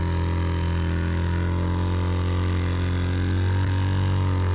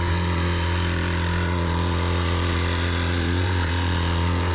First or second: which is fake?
second